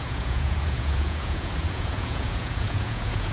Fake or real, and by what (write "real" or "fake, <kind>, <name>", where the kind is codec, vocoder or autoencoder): fake, vocoder, Vocos